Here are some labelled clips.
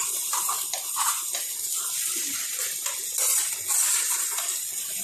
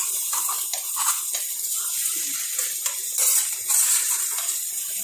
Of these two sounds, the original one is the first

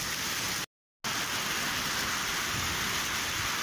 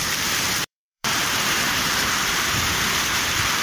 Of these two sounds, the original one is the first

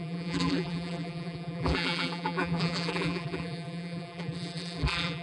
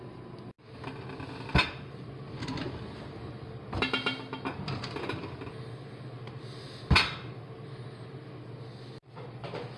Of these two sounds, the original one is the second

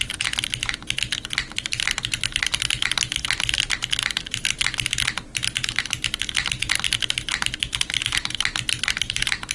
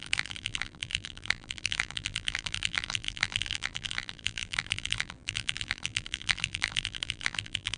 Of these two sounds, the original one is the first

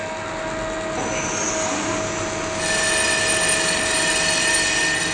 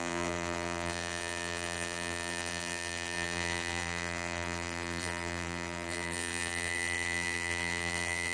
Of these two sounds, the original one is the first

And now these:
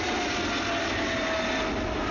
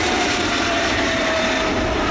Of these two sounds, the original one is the first